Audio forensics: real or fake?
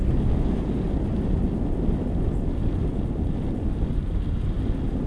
real